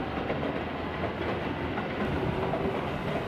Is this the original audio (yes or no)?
yes